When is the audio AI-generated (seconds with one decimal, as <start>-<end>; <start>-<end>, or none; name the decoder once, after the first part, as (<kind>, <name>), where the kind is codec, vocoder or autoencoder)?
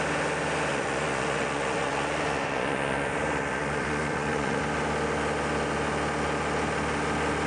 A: 0.7-4.6 (vocoder, Vocos)